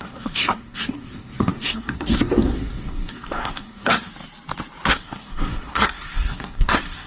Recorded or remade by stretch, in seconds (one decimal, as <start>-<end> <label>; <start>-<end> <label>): 0.0-4.1 remade; 4.1-4.9 recorded; 4.9-7.1 remade